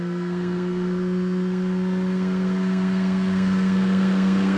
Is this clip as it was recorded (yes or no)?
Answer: no